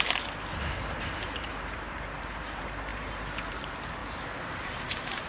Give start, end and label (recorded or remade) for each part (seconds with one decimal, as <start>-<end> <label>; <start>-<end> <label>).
0.0-4.0 remade; 4.0-4.5 recorded; 4.5-5.3 remade

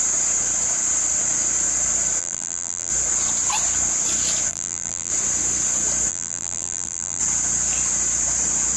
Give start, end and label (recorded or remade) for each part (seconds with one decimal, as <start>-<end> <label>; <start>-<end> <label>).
0.0-2.2 recorded; 2.2-2.9 remade; 2.9-4.5 recorded; 4.5-5.1 remade; 5.1-6.1 recorded; 6.1-7.2 remade; 7.2-8.8 recorded

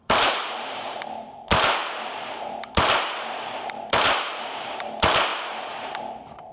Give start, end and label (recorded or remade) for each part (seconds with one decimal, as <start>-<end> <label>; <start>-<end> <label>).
0.0-6.5 remade

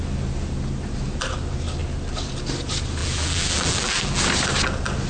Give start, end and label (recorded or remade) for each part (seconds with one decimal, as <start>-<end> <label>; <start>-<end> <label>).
0.0-3.0 recorded; 3.0-4.2 remade; 4.2-5.1 recorded

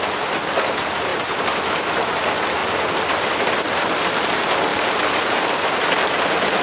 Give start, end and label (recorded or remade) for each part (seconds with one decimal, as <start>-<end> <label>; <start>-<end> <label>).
0.0-6.6 recorded

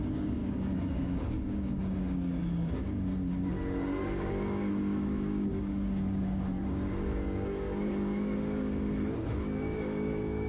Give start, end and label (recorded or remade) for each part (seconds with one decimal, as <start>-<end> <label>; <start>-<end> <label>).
0.0-10.5 remade